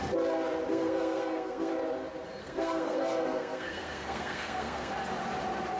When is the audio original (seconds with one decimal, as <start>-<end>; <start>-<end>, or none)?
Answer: 0.0-0.7; 1.7-2.4; 4.9-5.8